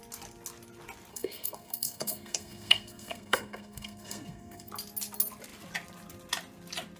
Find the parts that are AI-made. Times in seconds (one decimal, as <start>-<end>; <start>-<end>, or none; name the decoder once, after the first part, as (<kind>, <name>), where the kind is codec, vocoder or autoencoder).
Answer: 1.1-4.7 (codec, SNAC)

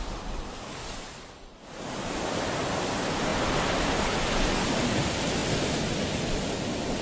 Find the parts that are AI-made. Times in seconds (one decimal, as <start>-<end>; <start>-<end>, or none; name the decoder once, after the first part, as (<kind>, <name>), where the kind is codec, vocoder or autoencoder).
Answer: none

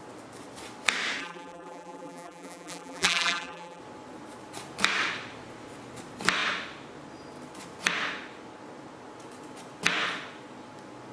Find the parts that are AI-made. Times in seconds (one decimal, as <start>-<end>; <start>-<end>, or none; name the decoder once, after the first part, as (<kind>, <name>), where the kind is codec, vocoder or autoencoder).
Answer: 1.2-3.8 (vocoder, BigVGAN v2)

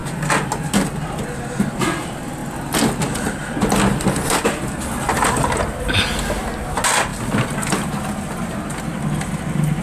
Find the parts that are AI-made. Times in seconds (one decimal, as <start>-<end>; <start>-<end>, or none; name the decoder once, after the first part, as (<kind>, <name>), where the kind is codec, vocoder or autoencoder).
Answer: none

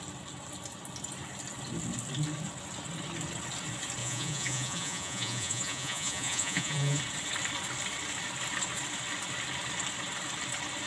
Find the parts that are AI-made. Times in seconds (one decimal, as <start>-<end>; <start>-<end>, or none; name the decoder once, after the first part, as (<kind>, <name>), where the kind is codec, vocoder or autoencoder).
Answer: 4.0-7.0 (vocoder, Vocos)

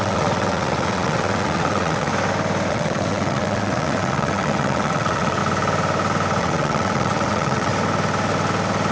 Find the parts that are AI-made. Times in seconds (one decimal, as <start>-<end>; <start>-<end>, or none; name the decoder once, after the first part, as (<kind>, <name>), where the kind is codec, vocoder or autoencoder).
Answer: 0.0-2.1 (vocoder, WaveNeXt); 2.7-5.4; 6.4-7.7

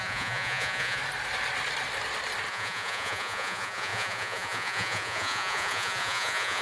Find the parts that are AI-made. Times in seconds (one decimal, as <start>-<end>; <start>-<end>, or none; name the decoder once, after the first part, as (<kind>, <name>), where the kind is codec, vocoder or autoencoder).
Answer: 0.0-1.0 (vocoder, Vocos); 2.5-6.6